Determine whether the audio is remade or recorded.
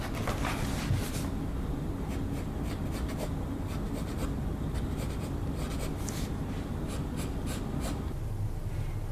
recorded